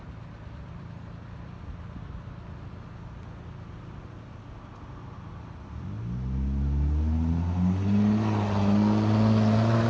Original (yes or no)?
yes